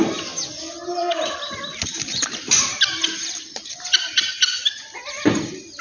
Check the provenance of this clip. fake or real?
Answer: real